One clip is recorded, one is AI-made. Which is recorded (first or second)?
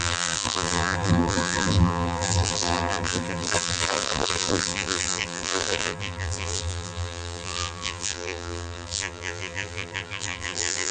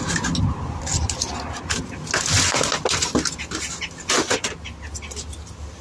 second